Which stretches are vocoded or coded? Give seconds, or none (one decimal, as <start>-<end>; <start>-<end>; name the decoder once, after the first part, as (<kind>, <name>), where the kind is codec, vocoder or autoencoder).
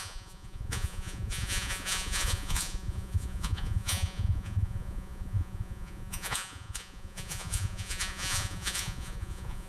0.0-9.7 (vocoder, Vocos)